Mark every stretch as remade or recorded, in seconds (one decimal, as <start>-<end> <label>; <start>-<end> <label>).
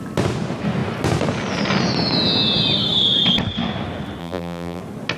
0.0-4.2 recorded; 4.2-4.8 remade; 4.8-5.2 recorded